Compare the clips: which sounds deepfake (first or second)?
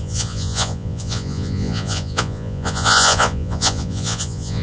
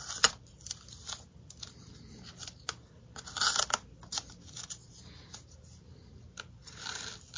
first